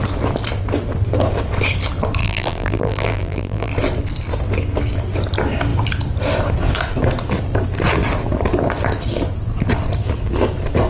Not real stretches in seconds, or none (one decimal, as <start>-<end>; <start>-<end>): 2.2-3.7